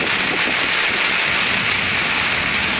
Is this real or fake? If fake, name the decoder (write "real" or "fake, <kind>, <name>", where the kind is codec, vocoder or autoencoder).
real